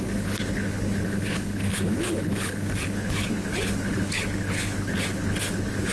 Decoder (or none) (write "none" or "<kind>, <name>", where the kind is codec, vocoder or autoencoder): codec, HILCodec